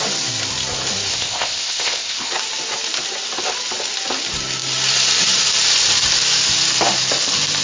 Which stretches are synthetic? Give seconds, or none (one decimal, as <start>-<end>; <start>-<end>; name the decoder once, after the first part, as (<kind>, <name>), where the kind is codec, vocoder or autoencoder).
1.1-2.3 (codec, ZipCodec)

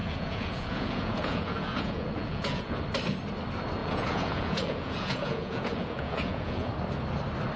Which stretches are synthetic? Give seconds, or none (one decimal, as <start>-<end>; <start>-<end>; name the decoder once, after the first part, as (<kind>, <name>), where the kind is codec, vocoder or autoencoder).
0.0-2.8 (vocoder, Vocos); 3.8-6.7

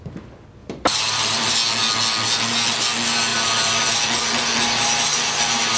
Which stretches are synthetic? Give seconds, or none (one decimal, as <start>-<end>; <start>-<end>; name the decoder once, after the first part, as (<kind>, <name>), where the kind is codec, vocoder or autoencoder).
0.6-1.5 (vocoder, BigVGAN v2)

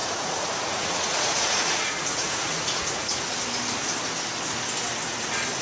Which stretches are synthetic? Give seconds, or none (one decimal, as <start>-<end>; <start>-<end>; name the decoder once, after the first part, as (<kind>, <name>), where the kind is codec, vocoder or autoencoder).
0.0-3.3 (vocoder, Vocos)

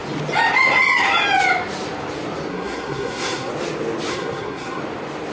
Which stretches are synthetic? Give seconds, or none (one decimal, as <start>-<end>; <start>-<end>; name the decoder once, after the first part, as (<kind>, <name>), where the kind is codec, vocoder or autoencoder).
2.5-3.5 (codec, SNAC); 4.1-4.8

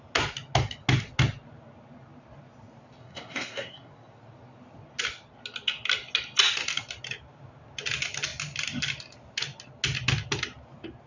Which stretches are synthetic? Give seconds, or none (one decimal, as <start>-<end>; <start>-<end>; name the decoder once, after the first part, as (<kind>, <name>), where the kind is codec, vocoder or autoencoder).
3.0-3.9 (codec, SNAC)